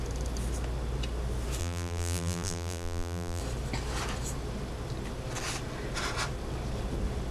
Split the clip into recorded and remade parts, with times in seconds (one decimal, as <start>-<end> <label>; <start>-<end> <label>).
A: 0.0-1.6 recorded; 1.6-3.4 remade; 3.4-7.3 recorded